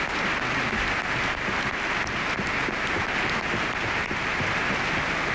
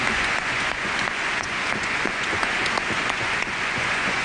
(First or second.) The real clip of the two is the first